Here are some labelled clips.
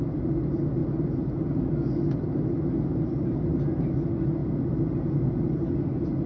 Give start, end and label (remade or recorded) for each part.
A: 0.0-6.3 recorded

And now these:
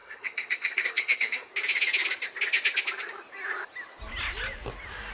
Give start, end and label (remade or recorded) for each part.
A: 0.0-1.5 remade; 1.5-5.1 recorded

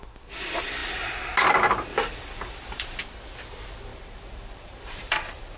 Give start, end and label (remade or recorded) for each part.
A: 0.0-1.9 recorded; 1.9-3.0 remade; 3.0-3.9 recorded; 3.9-5.6 remade

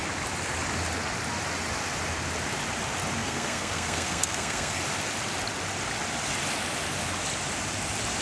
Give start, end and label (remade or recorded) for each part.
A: 0.0-3.2 recorded; 3.2-4.8 remade; 4.8-8.2 recorded